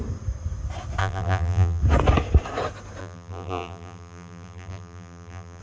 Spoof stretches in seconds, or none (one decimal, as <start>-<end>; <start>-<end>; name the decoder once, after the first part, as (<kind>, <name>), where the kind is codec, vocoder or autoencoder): 1.0-1.8 (vocoder, BigVGAN v2); 3.0-5.6